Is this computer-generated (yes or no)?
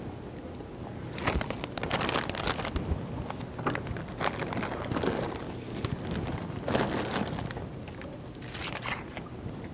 no